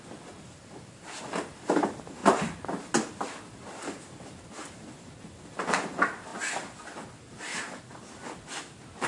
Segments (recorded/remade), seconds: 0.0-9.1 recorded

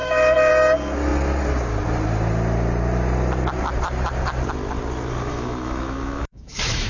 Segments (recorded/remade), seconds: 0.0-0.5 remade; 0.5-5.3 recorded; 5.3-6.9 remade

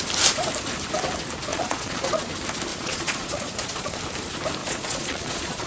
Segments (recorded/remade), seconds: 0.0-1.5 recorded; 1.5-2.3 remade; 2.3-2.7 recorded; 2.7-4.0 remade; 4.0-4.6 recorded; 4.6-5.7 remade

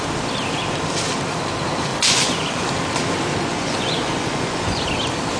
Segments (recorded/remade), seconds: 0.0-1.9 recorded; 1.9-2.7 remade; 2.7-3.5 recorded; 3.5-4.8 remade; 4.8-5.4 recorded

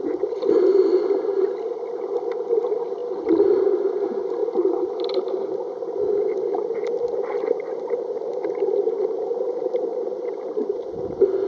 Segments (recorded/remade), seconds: 0.0-3.0 recorded; 3.0-3.7 remade; 3.7-9.9 recorded; 9.9-11.0 remade; 11.0-11.5 recorded

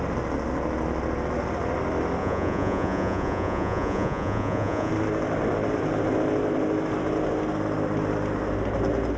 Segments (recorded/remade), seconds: 0.0-2.2 recorded; 2.2-4.9 remade; 4.9-9.2 recorded